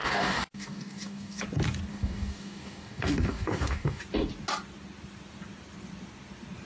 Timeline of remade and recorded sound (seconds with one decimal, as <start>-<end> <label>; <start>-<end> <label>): 0.0-1.4 remade; 1.4-1.9 recorded; 1.9-4.0 remade; 4.0-6.7 recorded